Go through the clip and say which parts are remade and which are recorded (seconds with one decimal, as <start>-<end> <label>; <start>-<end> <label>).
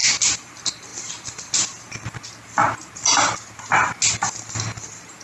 0.0-5.2 recorded